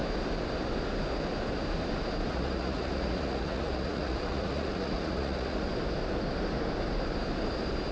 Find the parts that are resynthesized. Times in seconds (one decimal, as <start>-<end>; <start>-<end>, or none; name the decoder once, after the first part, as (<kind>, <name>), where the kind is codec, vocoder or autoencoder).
2.3-5.7 (vocoder, Vocos)